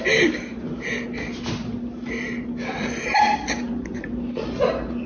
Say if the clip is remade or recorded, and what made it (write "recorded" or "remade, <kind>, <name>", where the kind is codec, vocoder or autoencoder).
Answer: recorded